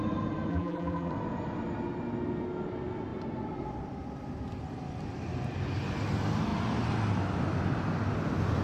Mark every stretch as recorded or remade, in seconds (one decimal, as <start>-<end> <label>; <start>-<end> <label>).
0.0-0.5 recorded; 0.5-1.1 remade; 1.1-8.6 recorded